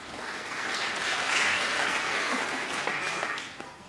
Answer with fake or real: fake